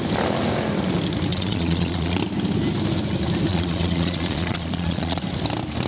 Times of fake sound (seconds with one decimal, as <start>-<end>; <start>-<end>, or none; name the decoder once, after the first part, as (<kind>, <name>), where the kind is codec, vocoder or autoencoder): 1.3-2.2 (vocoder, Vocos); 3.5-5.2